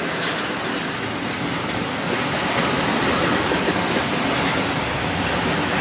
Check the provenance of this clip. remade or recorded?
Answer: recorded